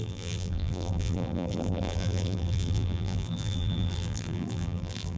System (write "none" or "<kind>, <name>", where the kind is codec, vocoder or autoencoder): vocoder, BigVGAN v2